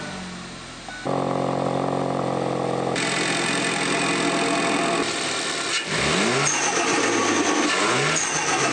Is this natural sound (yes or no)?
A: yes